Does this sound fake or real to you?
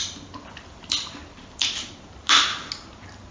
real